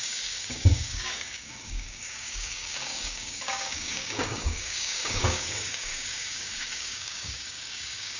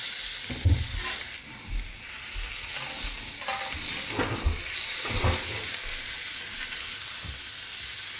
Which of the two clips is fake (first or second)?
first